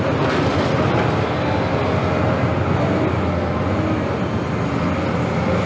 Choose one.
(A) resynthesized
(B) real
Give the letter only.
B